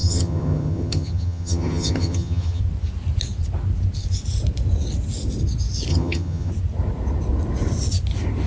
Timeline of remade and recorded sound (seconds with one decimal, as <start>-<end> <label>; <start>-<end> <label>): 0.0-2.6 remade; 2.6-5.9 recorded; 5.9-6.5 remade; 6.5-8.5 recorded